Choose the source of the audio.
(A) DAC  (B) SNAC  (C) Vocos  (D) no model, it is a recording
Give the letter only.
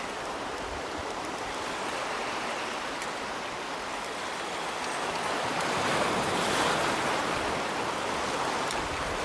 D